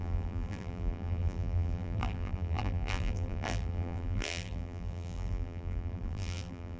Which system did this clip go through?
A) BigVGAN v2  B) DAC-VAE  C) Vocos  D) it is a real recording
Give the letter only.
A